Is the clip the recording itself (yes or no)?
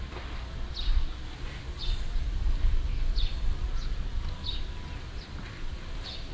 yes